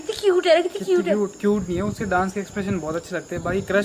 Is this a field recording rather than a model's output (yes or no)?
yes